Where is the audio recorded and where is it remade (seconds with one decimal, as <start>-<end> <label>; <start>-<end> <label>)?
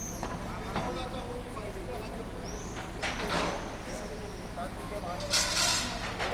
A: 0.0-3.8 recorded; 3.8-5.0 remade; 5.0-6.3 recorded